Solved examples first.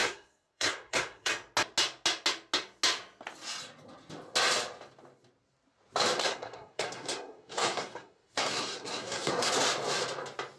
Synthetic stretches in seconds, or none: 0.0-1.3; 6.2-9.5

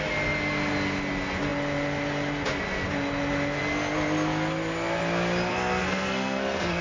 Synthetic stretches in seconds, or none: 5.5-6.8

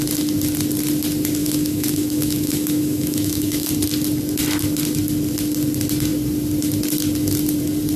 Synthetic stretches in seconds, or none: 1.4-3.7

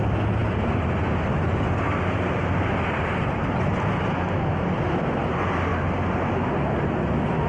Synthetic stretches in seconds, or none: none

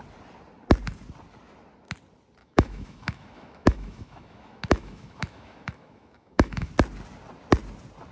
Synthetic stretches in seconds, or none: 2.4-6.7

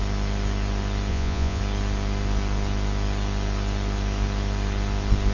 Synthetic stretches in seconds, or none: 1.1-1.6